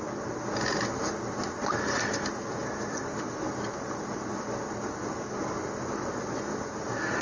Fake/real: real